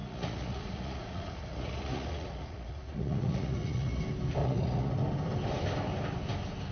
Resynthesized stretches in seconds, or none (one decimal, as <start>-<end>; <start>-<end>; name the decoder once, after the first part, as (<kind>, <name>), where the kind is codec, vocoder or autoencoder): 0.0-4.0 (vocoder, Vocos); 4.4-4.9